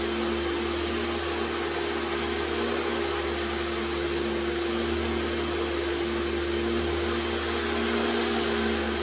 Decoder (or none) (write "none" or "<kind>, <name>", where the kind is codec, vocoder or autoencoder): none